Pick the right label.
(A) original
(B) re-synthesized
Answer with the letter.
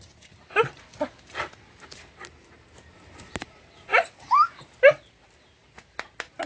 A